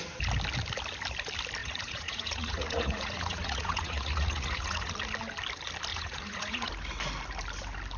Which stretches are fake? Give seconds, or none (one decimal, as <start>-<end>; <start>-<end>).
1.6-4.9; 5.9-6.7